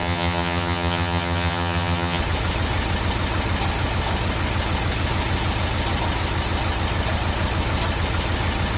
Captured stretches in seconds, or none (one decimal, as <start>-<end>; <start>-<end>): 2.2-8.8